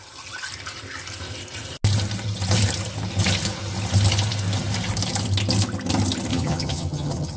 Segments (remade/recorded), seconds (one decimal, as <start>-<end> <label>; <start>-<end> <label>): 0.0-6.3 recorded; 6.3-7.4 remade